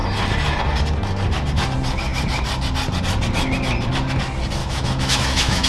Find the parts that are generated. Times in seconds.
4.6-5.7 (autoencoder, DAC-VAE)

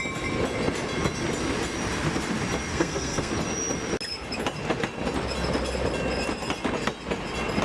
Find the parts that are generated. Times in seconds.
2.7-3.3 (codec, SNAC)

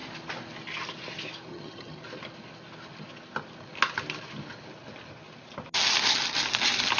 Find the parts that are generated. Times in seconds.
1.5-2.0 (vocoder, HiFi-GAN)

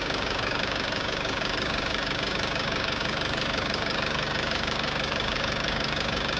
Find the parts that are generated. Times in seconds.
0.0-6.4 (codec, DAC)

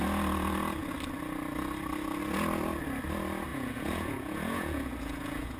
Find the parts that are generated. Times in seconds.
3.5-5.6 (vocoder, Vocos)

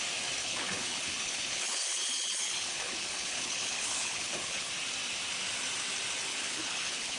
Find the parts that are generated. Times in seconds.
0.4-4.7 (codec, HILCodec); 6.3-7.2

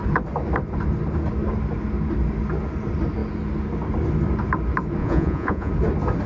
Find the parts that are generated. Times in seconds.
5.0-5.7 (vocoder, Vocos)

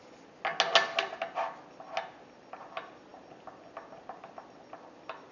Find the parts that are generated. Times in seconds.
none